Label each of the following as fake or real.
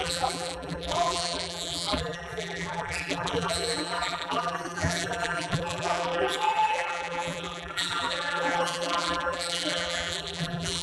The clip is fake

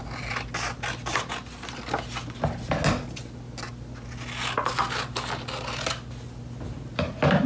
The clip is real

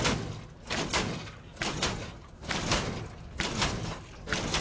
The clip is real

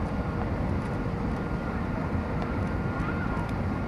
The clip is fake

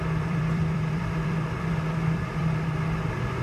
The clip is fake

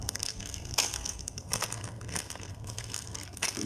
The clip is fake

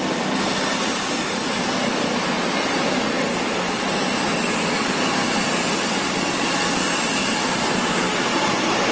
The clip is real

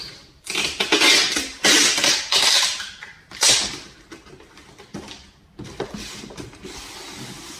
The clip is real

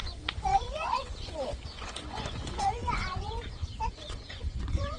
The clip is fake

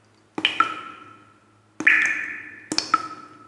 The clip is real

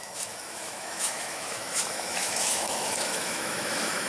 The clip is fake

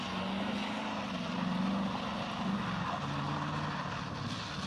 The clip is real